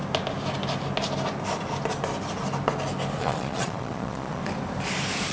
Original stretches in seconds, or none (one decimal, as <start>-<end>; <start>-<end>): 0.0-3.2; 4.4-5.3